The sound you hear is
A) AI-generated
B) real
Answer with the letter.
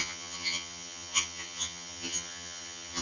A